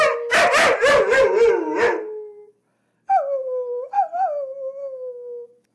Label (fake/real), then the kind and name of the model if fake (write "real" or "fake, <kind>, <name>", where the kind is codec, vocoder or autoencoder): real